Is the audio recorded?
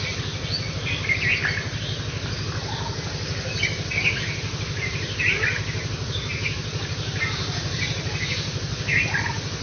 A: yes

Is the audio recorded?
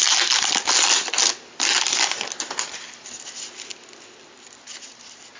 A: yes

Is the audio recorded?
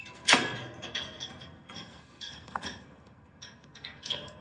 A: no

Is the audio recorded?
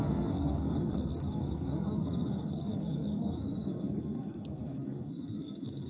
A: no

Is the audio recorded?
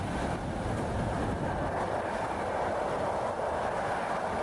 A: yes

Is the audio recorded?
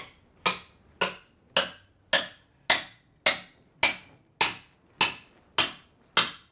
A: yes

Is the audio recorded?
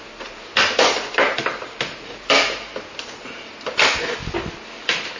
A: yes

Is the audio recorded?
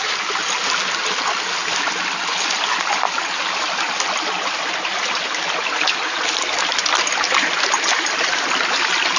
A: yes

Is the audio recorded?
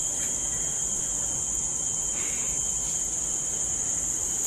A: yes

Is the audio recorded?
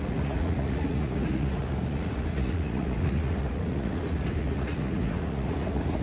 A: no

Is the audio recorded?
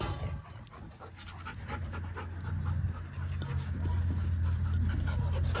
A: yes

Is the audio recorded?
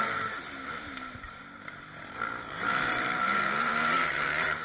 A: no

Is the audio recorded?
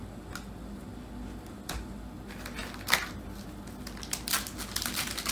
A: yes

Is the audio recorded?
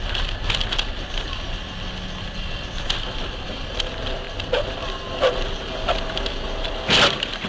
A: yes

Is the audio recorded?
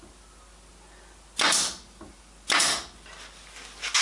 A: yes